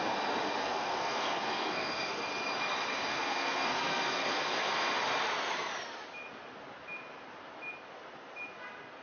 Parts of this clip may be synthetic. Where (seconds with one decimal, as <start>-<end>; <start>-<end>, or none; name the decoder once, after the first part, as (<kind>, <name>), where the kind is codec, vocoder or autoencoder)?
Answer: 0.6-2.3 (codec, SNAC); 3.1-5.0